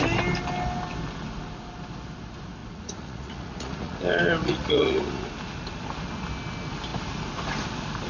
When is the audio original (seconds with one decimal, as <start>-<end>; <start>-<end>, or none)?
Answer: 0.0-2.6; 4.0-4.4; 5.3-8.1